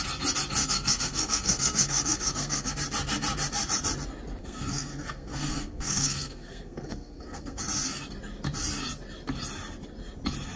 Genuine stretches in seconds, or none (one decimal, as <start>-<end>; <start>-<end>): 0.0-0.6; 2.7-4.4; 7.6-10.6